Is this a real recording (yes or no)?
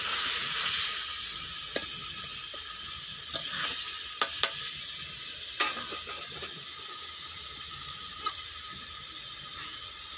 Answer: yes